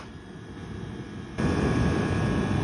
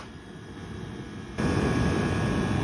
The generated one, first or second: first